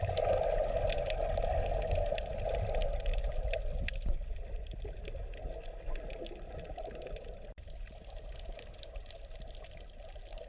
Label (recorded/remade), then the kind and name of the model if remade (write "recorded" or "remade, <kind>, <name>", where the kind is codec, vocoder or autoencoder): recorded